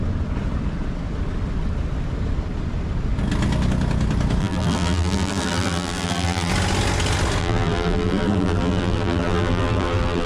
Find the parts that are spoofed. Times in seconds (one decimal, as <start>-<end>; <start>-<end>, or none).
4.4-6.5; 7.4-10.3